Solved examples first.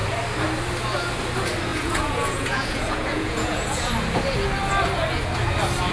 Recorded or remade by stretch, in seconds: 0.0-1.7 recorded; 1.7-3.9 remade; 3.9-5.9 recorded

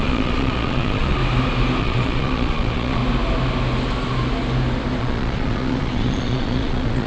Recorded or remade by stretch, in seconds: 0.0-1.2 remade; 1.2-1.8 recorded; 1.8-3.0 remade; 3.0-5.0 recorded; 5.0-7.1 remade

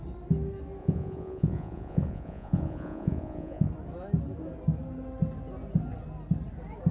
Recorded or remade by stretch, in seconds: 0.0-0.8 recorded; 0.8-3.7 remade; 3.7-6.9 recorded

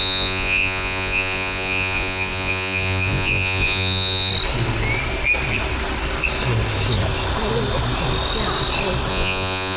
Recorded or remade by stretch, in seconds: 0.0-4.3 remade; 4.3-9.1 recorded; 9.1-9.8 remade